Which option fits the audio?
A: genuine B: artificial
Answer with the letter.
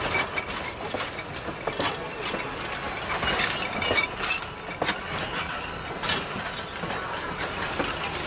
A